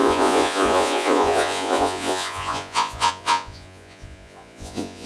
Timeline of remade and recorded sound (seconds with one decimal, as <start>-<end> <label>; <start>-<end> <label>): 0.0-5.1 remade